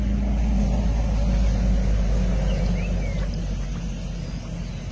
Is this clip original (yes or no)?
yes